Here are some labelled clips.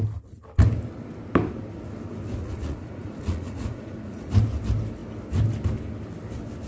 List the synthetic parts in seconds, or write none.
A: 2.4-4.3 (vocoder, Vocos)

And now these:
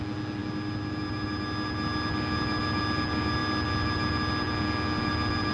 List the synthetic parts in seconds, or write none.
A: none

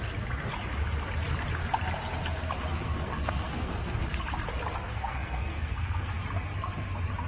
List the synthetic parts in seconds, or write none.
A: 2.7-4.1 (codec, SNAC); 4.7-6.1